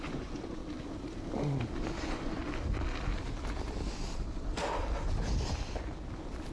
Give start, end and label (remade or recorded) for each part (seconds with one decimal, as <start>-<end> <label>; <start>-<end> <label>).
0.0-0.6 remade; 0.6-2.0 recorded; 2.0-2.4 remade; 2.4-6.5 recorded